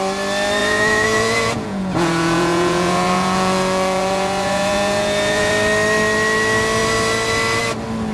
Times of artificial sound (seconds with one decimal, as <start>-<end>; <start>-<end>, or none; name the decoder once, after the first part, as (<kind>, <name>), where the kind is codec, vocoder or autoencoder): 0.6-5.5 (vocoder, Vocos)